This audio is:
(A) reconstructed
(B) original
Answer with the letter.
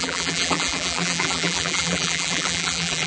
A